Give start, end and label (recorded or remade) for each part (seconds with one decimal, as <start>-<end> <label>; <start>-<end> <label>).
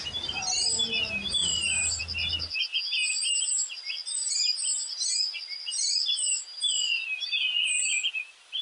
0.0-8.6 recorded